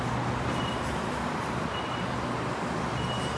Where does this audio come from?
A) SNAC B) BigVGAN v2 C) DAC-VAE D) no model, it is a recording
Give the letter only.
D